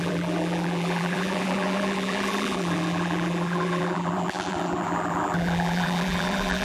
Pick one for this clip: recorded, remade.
remade